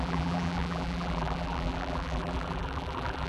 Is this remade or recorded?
remade